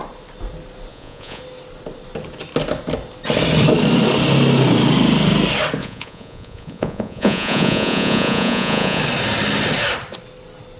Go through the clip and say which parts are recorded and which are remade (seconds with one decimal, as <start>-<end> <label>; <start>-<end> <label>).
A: 0.0-0.9 recorded; 0.9-1.4 remade; 1.4-5.8 recorded; 5.8-9.0 remade; 9.0-10.8 recorded